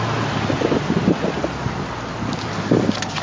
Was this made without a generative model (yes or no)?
yes